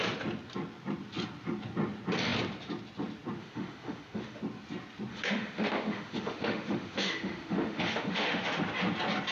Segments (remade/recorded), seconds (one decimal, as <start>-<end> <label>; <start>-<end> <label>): 0.0-3.4 recorded; 3.4-4.4 remade; 4.4-5.1 recorded; 5.1-8.6 remade; 8.6-9.3 recorded